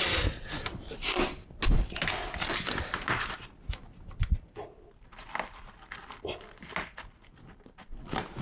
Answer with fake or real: real